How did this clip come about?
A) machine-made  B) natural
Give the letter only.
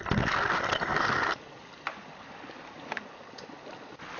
B